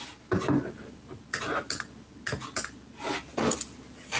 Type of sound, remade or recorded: recorded